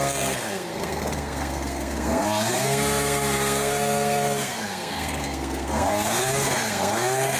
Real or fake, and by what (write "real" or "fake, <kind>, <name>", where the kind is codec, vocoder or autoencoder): fake, codec, SNAC